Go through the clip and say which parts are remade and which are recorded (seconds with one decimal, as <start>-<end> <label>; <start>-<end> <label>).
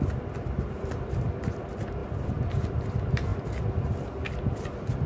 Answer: 0.0-2.0 recorded; 2.0-2.8 remade; 2.8-5.1 recorded